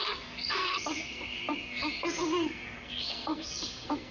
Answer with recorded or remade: remade